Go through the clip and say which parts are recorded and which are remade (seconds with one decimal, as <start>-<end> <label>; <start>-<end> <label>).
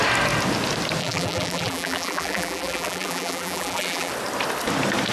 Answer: 0.0-1.0 recorded; 1.0-4.1 remade; 4.1-5.1 recorded